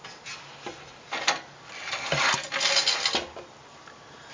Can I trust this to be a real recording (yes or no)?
yes